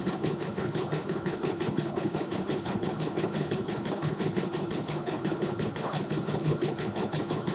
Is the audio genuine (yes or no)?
no